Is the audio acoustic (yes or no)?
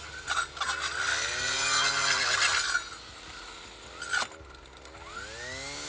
yes